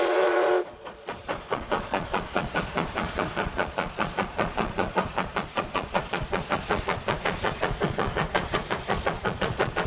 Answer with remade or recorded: remade